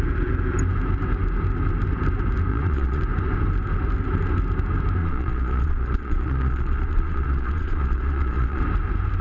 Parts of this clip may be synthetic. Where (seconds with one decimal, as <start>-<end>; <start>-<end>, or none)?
2.5-3.0; 5.0-8.6